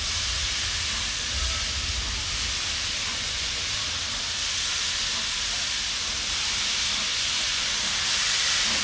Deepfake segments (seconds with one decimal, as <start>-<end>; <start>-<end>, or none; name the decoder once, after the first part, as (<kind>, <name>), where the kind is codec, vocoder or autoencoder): 3.1-3.6 (vocoder, Vocos); 7.1-7.7